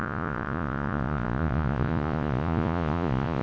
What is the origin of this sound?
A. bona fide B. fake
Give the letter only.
B